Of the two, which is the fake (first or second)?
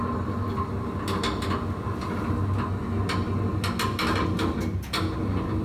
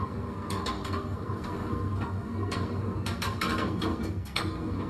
second